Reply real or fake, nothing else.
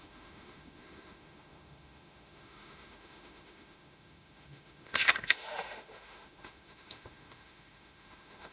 fake